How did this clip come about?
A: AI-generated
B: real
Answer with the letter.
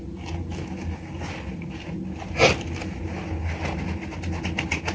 B